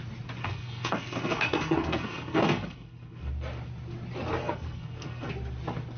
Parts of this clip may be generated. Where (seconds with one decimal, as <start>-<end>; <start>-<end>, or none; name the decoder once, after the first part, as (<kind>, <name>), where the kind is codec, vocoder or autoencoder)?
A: 0.4-3.3 (codec, SNAC); 4.4-5.3